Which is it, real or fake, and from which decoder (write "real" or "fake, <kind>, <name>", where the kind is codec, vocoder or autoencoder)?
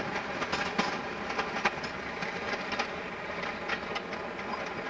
real